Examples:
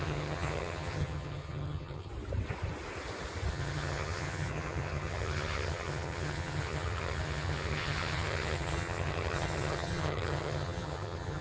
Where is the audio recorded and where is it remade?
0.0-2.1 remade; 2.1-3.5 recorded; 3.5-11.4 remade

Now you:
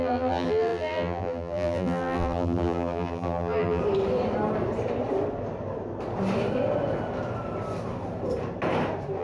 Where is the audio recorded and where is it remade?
0.0-3.8 remade; 3.8-9.2 recorded